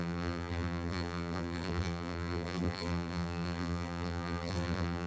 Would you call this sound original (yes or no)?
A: no